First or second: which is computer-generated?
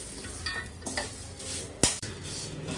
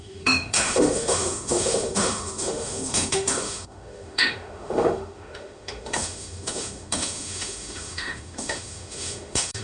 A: second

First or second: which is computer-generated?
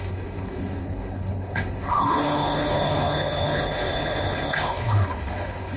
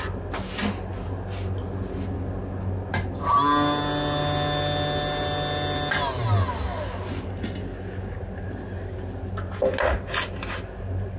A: first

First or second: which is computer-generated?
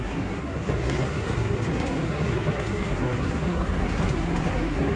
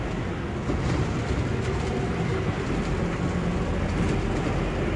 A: first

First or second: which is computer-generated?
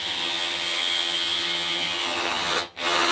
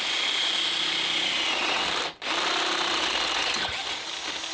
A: first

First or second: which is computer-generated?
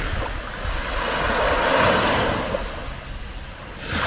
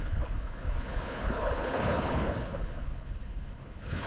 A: second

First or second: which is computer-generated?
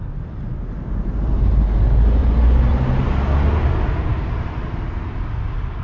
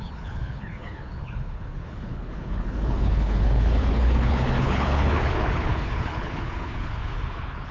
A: second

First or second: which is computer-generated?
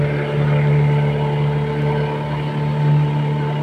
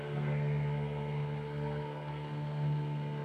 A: second